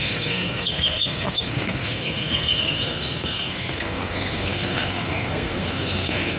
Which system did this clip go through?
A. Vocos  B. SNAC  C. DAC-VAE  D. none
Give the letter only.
B